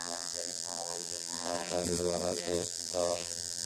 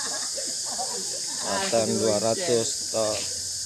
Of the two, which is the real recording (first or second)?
second